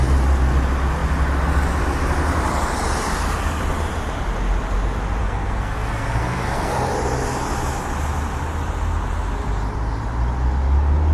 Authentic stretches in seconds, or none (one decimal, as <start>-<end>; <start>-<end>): 0.0-5.2; 6.8-11.1